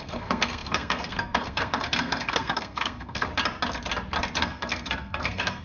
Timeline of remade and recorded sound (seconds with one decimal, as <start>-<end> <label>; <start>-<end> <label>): 0.0-3.3 remade; 3.3-4.4 recorded; 4.4-5.6 remade